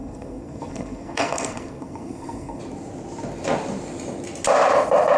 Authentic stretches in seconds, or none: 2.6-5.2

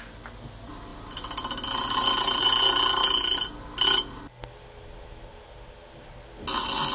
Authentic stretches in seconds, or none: 0.0-6.9

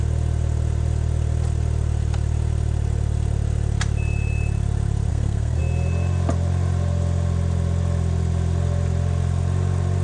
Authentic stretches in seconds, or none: 0.0-5.1; 5.6-10.0

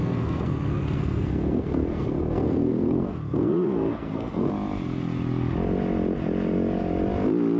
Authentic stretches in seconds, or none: 4.5-7.6

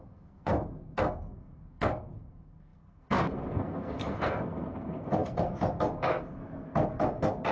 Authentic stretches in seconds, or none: none

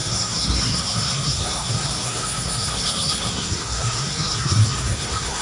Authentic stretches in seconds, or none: none

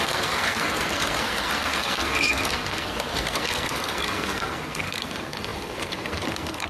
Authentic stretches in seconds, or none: none